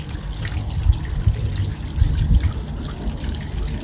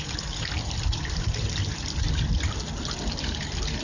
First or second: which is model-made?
second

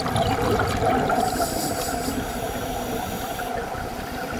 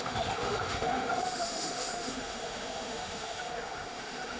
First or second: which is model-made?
second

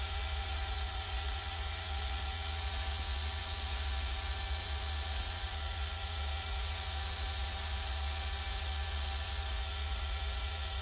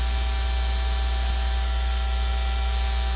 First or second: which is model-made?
first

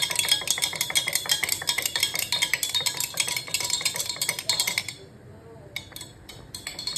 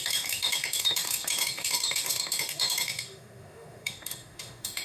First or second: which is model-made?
second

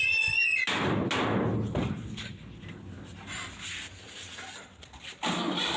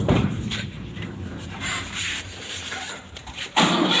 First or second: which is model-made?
second